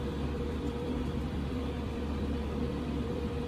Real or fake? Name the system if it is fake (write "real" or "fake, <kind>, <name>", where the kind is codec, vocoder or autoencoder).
fake, vocoder, BigVGAN v2